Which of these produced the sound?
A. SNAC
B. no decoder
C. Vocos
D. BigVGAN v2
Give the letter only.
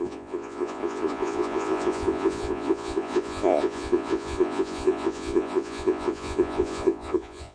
C